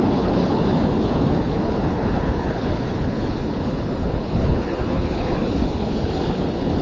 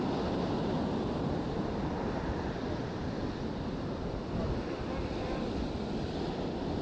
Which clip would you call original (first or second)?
second